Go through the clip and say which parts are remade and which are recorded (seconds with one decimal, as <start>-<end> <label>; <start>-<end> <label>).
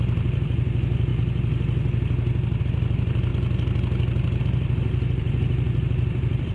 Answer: 0.0-1.1 remade; 1.1-2.6 recorded; 2.6-3.3 remade; 3.3-4.4 recorded; 4.4-6.5 remade